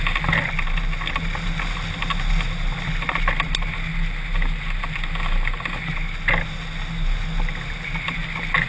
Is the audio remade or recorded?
recorded